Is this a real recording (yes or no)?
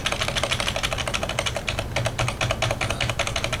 yes